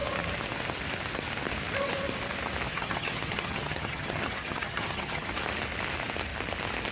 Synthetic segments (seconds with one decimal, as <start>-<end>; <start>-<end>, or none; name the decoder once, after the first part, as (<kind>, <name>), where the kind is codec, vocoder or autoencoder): 2.7-5.3 (vocoder, HiFi-GAN)